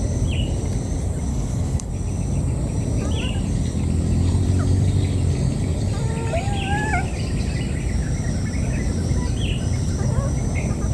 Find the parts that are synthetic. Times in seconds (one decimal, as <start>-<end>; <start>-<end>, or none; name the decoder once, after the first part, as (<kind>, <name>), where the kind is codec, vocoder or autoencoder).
1.3-1.9 (codec, HILCodec)